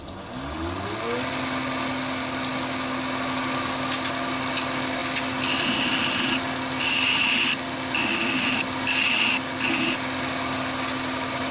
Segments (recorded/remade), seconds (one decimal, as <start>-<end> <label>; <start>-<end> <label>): 0.0-11.5 recorded